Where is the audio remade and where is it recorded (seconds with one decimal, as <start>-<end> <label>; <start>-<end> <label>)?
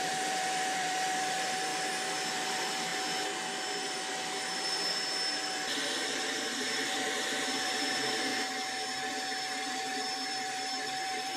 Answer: 0.0-1.7 remade; 1.7-2.3 recorded; 2.3-2.9 remade; 2.9-3.7 recorded; 3.7-8.3 remade; 8.3-9.4 recorded; 9.4-11.4 remade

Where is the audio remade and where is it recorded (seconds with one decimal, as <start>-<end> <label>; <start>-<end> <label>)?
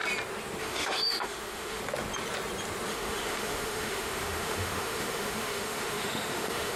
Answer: 0.0-0.6 recorded; 0.6-1.8 remade; 1.8-2.9 recorded; 2.9-6.8 remade